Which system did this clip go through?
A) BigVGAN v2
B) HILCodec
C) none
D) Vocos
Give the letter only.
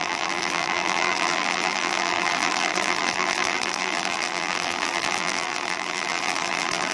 A